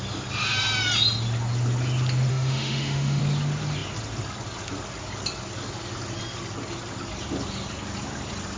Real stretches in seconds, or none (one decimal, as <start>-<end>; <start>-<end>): 0.0-2.3; 3.2-8.6